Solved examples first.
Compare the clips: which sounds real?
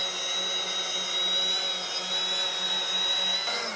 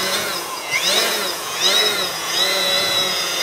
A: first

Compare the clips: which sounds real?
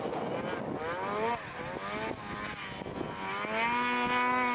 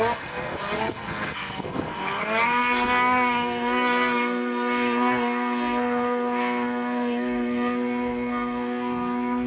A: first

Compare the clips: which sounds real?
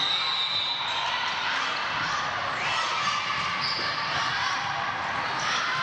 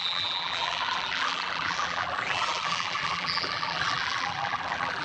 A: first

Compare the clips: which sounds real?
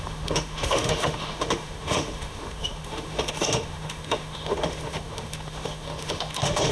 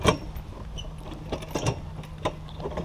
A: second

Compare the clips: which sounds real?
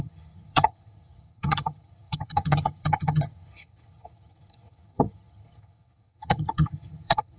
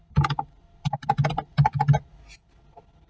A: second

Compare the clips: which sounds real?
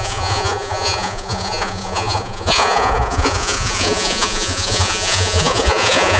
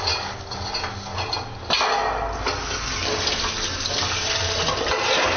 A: second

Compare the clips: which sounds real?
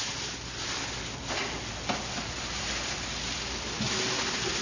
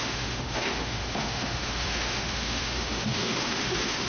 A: first